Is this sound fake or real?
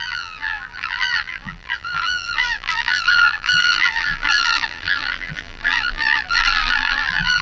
fake